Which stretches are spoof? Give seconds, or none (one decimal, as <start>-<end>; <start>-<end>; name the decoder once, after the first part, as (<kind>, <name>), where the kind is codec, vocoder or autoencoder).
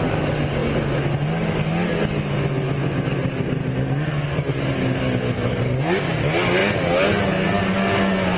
none